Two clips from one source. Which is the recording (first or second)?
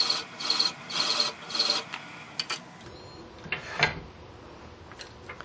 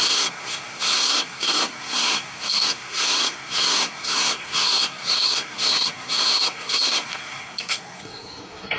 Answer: first